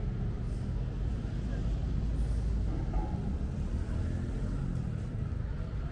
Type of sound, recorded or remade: recorded